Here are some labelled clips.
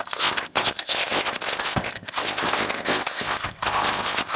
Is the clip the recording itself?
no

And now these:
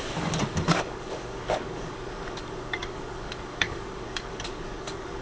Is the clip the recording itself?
no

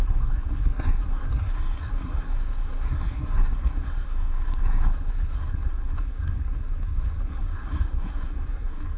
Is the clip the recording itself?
no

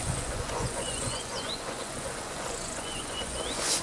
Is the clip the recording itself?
no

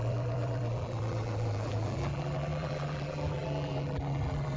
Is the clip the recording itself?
no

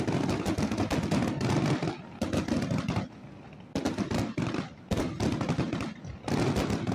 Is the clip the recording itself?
yes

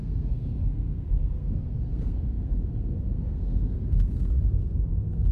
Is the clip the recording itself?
no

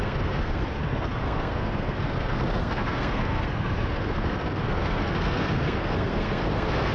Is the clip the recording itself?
no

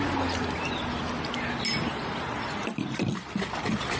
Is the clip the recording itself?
yes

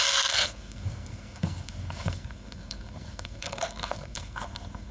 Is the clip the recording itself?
no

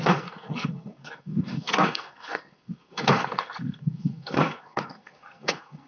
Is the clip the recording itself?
no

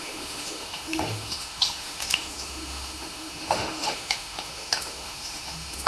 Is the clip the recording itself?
no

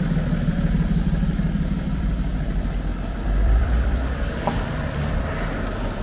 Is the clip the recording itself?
no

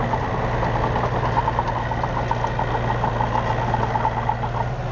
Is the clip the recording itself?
yes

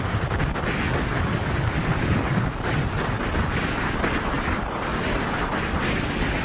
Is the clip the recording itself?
yes